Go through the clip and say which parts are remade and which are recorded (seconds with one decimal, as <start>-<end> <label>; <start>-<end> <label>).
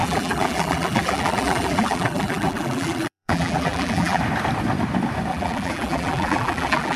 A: 0.0-4.2 remade; 4.2-5.3 recorded; 5.3-7.0 remade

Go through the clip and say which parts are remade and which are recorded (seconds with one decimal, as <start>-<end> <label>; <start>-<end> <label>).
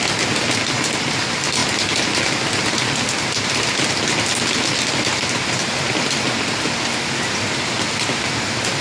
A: 0.0-8.8 recorded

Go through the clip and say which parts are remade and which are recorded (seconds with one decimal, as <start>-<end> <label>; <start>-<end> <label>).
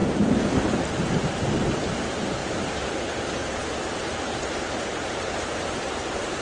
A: 0.0-2.4 recorded; 2.4-5.2 remade; 5.2-6.4 recorded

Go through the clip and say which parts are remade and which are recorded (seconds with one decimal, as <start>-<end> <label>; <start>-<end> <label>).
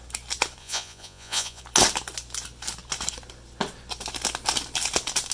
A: 0.0-0.6 recorded; 0.6-1.6 remade; 1.6-5.3 recorded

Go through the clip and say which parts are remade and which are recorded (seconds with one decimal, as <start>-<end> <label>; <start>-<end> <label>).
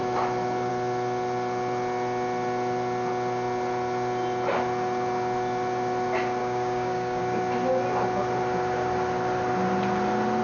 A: 0.0-6.4 recorded; 6.4-7.2 remade; 7.2-10.4 recorded